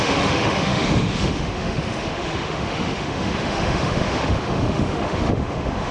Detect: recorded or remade remade